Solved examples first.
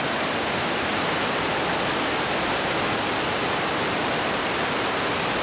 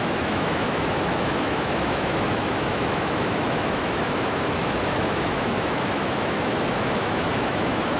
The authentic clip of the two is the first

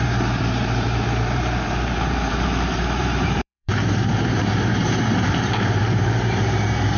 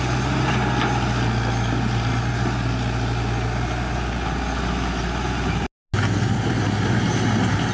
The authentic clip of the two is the second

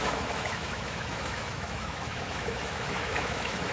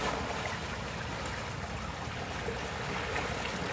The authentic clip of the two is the second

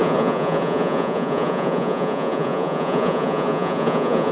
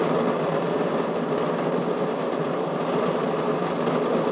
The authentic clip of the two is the second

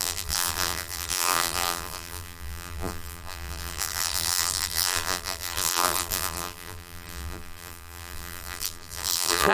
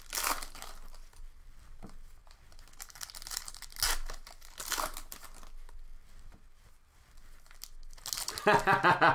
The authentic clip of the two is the second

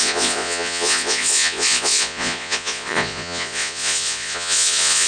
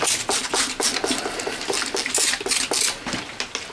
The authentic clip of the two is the second